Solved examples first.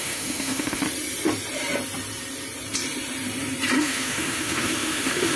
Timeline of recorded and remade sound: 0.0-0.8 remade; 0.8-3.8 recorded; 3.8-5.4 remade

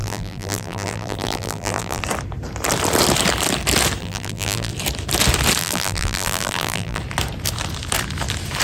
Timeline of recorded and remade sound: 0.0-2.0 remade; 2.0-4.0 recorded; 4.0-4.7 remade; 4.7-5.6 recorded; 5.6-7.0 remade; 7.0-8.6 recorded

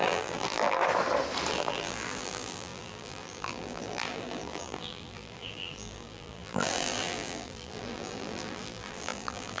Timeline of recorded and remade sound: 0.0-0.8 remade; 0.8-1.5 recorded; 1.5-9.6 remade

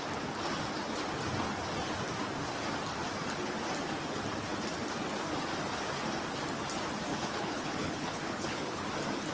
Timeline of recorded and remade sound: 0.0-7.1 recorded; 7.1-8.8 remade; 8.8-9.3 recorded

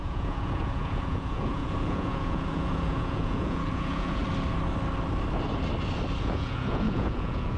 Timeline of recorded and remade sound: 0.0-4.2 remade; 4.2-6.2 recorded; 6.2-7.6 remade

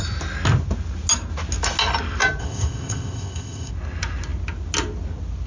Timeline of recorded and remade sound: 0.0-2.4 recorded; 2.4-3.7 remade; 3.7-5.5 recorded